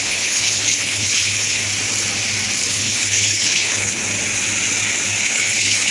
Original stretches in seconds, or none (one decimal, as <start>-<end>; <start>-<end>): 1.6-2.7; 4.0-5.2